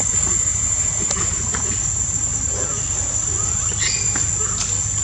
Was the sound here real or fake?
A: real